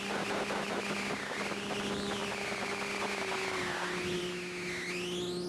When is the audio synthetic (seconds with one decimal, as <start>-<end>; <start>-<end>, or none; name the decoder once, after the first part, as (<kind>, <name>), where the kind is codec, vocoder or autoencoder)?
none